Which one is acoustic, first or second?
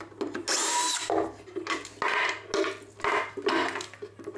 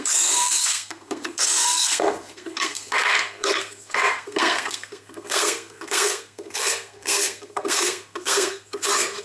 first